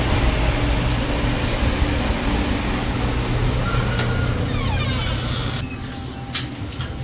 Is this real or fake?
real